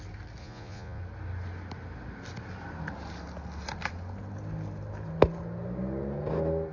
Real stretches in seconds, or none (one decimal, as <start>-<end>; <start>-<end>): 0.0-0.4; 1.0-6.7